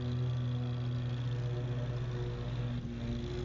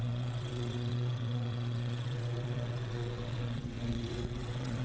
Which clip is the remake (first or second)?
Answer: second